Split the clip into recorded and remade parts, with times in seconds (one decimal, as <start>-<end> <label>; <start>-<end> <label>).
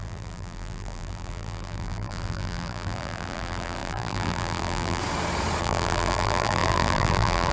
0.0-5.0 remade; 5.0-5.6 recorded; 5.6-7.5 remade